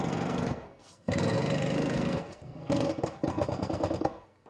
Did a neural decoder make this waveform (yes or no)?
yes